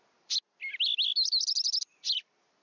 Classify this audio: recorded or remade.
recorded